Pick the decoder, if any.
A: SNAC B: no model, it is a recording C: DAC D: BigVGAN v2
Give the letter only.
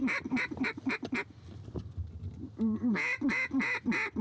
B